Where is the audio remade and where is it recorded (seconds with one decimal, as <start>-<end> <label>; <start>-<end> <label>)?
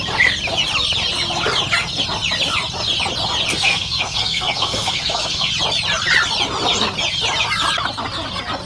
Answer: 0.0-3.5 recorded; 3.5-5.5 remade; 5.5-8.7 recorded